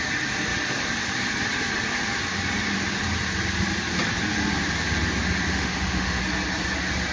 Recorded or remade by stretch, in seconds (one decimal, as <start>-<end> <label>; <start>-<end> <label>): 0.0-5.5 recorded; 5.5-6.2 remade; 6.2-7.1 recorded